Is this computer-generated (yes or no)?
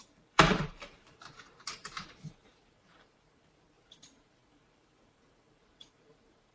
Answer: yes